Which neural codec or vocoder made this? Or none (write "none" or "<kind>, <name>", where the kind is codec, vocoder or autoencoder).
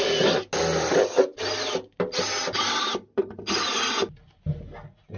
none